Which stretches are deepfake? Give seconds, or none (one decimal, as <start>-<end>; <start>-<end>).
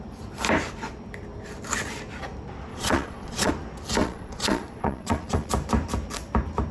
2.7-3.5; 4.0-5.5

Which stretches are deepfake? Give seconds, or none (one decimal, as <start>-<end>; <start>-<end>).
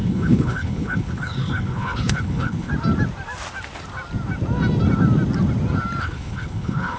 0.0-2.7; 6.0-7.0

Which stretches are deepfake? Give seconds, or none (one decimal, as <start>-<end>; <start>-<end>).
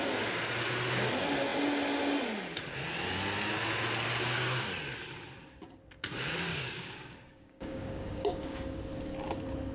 6.5-8.8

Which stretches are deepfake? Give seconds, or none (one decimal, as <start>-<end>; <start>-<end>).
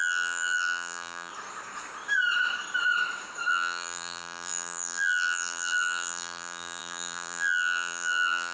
0.0-1.3; 3.5-8.5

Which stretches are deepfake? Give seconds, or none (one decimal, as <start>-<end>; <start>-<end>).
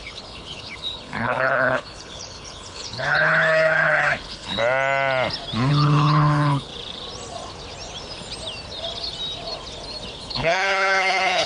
0.0-4.6; 5.7-6.7; 10.2-11.5